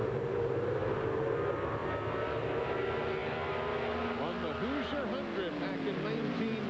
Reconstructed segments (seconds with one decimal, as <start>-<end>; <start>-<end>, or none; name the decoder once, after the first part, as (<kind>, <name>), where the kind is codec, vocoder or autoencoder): none